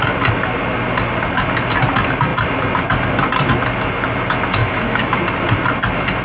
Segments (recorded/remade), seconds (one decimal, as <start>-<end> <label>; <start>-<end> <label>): 0.0-4.6 recorded; 4.6-5.2 remade; 5.2-6.2 recorded